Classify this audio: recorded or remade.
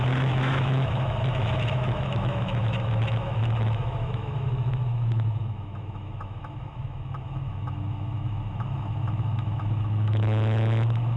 remade